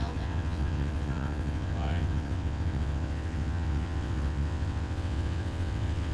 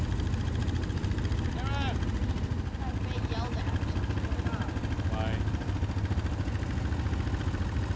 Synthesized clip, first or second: first